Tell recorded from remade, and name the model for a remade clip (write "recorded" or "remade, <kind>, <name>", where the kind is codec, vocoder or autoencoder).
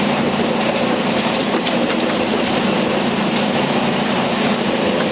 remade, vocoder, BigVGAN v2